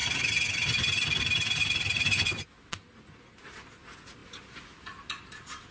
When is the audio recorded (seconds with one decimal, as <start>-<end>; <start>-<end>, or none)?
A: 0.0-5.7